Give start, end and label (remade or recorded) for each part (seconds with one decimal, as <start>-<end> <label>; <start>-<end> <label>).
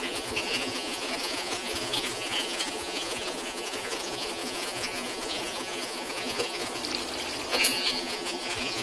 0.0-6.8 remade; 6.8-7.5 recorded; 7.5-8.8 remade